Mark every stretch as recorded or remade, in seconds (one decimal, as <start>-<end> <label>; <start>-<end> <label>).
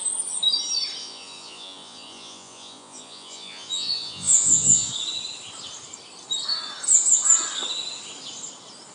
0.0-1.0 recorded; 1.0-4.9 remade; 4.9-8.9 recorded